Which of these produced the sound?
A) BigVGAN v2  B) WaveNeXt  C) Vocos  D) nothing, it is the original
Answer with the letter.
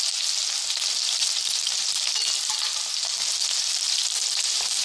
D